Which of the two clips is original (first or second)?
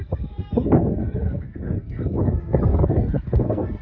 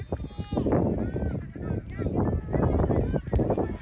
second